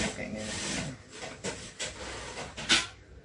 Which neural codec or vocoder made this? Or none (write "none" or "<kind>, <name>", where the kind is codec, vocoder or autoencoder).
none